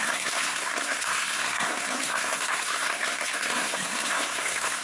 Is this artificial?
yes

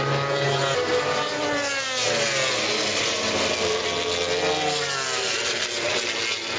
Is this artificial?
no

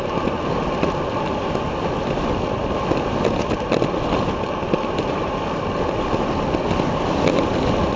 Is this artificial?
no